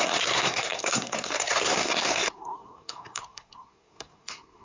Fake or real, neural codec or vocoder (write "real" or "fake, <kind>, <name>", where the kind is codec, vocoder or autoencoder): fake, codec, SNAC